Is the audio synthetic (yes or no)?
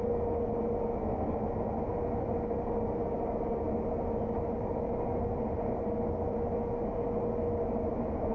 no